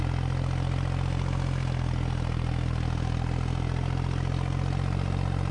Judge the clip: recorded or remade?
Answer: recorded